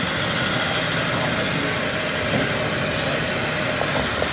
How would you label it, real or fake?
real